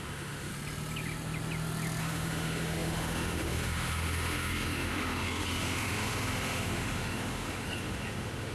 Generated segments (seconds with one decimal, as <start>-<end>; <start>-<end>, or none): 0.0-0.5; 2.0-8.5

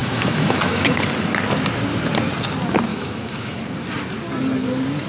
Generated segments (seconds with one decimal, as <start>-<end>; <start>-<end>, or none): 0.0-0.9; 2.9-3.6